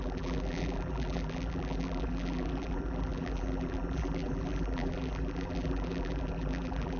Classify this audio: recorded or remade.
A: remade